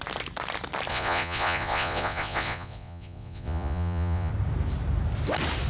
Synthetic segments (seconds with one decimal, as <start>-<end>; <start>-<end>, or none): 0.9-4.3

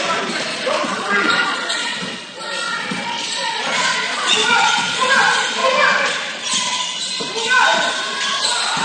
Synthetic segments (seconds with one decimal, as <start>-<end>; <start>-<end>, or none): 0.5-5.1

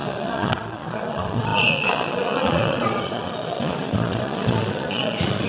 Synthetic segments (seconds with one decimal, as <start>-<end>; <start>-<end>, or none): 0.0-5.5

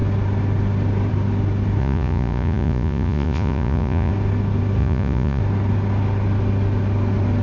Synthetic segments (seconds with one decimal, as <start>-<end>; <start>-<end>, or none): 1.8-4.1; 4.8-5.4

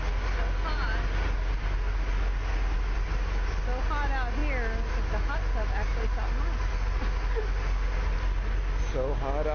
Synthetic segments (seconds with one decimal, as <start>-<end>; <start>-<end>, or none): none

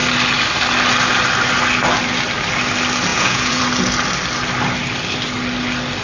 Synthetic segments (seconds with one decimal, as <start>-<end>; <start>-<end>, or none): 3.1-3.6

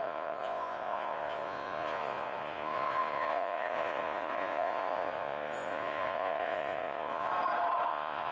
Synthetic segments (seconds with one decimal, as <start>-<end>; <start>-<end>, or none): 0.0-7.3; 7.9-8.3